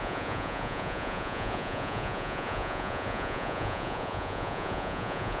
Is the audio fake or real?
fake